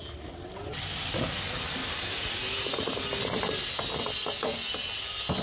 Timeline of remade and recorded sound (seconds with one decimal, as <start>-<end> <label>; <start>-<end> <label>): 0.0-5.4 recorded